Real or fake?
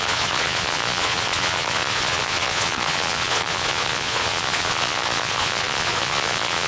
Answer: fake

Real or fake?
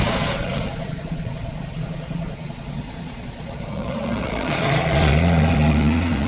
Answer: fake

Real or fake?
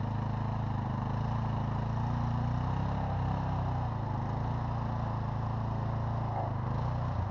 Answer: real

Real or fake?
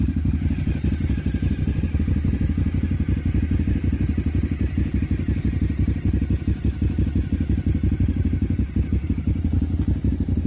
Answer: real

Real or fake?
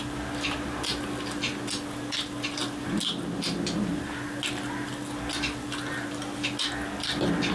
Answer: real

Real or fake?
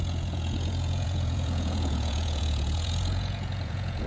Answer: fake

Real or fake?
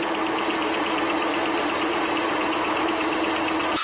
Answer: real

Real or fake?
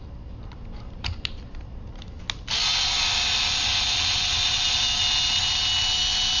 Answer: real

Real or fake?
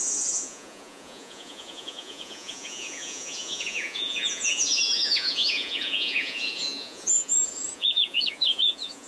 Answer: fake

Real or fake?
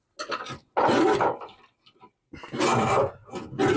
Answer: real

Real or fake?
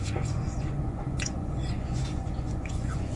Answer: fake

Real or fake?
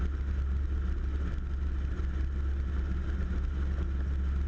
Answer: real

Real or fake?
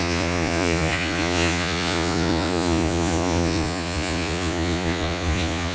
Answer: fake